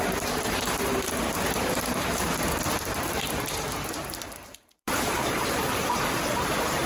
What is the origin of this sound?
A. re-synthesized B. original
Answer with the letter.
A